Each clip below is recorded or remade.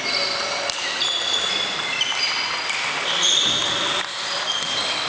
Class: recorded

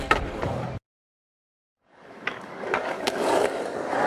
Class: remade